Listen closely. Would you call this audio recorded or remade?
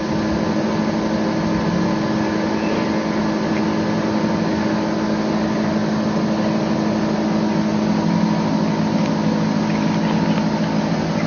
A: recorded